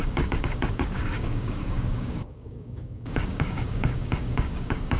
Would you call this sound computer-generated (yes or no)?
yes